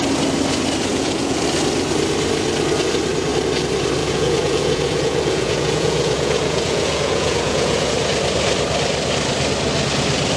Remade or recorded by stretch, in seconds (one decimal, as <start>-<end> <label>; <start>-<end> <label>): 0.0-0.9 recorded; 0.9-1.4 remade; 1.4-4.0 recorded; 4.0-7.9 remade; 7.9-10.4 recorded